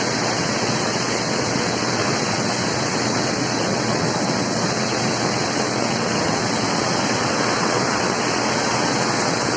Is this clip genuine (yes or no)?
no